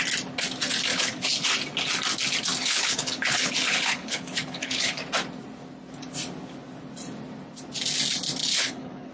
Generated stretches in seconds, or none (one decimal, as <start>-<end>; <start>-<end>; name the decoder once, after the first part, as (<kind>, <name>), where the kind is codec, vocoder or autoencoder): 0.9-1.5 (codec, HILCodec); 2.6-5.0; 8.4-9.1

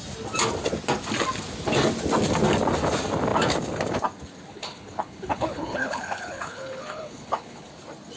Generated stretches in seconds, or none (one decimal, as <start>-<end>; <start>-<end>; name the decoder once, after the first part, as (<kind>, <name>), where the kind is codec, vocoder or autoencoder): 4.5-7.7 (codec, HILCodec)

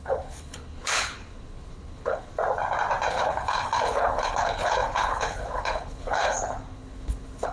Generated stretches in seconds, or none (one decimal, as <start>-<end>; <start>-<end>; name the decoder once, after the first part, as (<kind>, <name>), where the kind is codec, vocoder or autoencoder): 0.0-2.3 (codec, HILCodec); 3.1-7.5

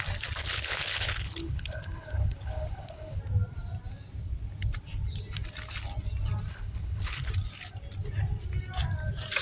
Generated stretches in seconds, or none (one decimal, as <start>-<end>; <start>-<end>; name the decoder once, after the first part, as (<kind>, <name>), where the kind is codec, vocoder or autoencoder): 0.4-3.2 (codec, HILCodec); 6.5-7.3

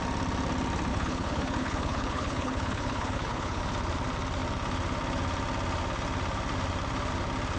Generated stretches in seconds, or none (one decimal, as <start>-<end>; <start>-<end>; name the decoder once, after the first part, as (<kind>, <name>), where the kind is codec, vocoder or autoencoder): 0.9-3.6 (codec, HILCodec)